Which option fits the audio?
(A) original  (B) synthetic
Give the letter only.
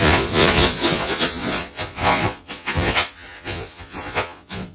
B